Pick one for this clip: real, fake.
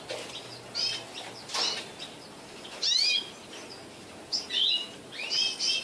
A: real